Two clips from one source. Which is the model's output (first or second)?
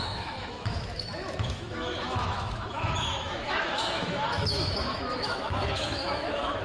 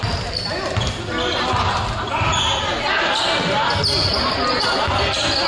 first